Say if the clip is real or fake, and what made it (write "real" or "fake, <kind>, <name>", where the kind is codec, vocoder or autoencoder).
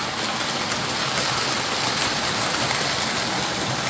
real